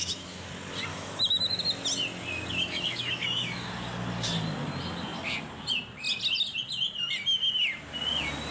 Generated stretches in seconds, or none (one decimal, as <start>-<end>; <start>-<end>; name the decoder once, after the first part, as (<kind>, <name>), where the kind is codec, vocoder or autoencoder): 0.0-0.5 (autoencoder, DAC-VAE); 0.9-1.6; 2.6-3.7